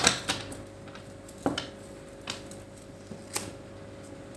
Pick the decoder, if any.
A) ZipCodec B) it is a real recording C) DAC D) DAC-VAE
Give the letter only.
B